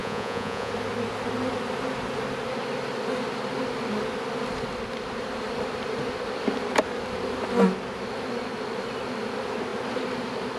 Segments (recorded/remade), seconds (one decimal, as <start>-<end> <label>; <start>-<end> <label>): 0.0-0.7 remade; 0.7-10.6 recorded